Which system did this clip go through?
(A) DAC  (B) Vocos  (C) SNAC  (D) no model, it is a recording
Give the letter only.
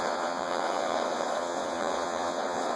B